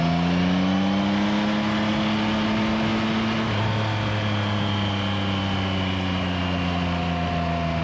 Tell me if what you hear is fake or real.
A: real